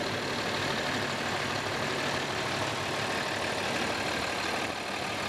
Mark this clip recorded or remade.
recorded